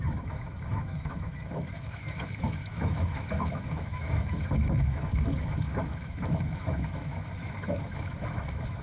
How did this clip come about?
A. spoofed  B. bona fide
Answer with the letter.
A